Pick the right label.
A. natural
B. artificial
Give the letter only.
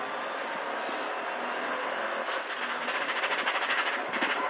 A